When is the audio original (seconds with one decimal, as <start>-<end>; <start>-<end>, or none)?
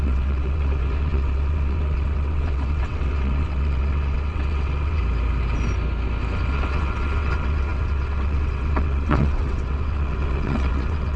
5.0-6.5